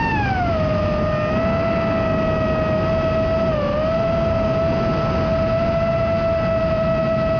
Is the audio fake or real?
real